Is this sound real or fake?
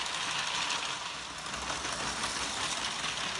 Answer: real